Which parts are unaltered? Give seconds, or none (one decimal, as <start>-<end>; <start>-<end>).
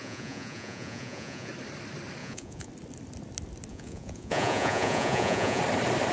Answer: 1.5-2.2; 2.7-3.7; 5.6-6.1